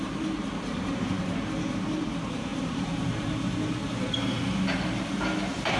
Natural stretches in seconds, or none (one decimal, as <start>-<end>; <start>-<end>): none